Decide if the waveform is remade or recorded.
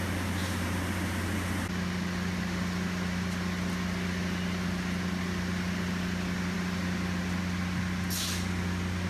recorded